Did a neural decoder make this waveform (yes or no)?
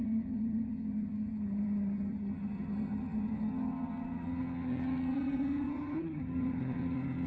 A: yes